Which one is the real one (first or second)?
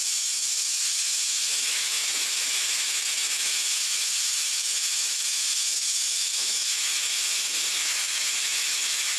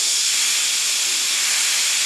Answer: second